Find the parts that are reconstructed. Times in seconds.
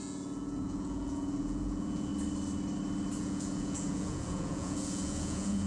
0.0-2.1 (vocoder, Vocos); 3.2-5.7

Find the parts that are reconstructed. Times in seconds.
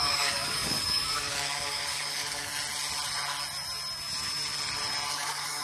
0.0-2.5 (codec, DAC); 5.1-5.6